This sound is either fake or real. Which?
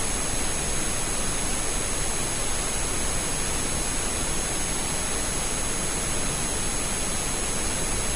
real